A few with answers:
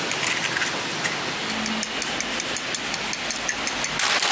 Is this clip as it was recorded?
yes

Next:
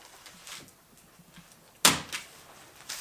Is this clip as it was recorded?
yes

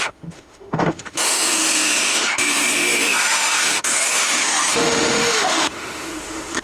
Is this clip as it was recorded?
no